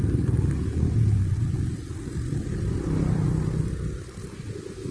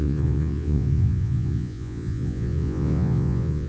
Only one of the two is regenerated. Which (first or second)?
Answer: second